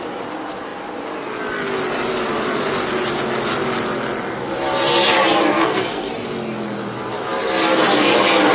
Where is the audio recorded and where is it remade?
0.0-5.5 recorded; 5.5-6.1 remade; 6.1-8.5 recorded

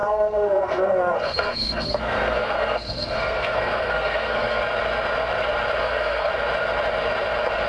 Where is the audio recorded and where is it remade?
0.0-4.6 remade; 4.6-5.8 recorded; 5.8-6.3 remade; 6.3-7.7 recorded

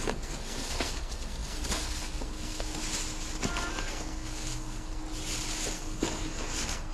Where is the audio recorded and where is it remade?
0.0-2.8 remade; 2.8-3.8 recorded; 3.8-5.0 remade; 5.0-5.7 recorded; 5.7-6.9 remade

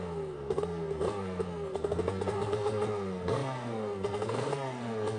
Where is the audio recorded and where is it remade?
0.0-5.2 remade